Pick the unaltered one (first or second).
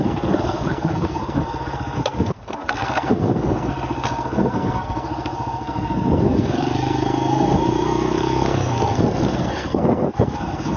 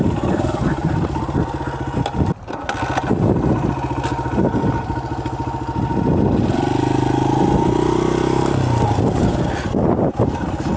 second